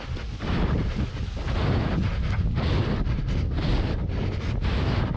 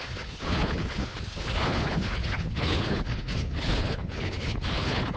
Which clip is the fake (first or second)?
second